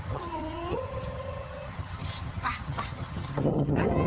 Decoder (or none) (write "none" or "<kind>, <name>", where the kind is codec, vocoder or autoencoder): vocoder, HiFi-GAN